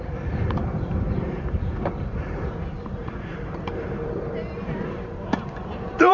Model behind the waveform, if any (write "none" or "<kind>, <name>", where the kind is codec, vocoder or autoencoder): vocoder, BigVGAN v2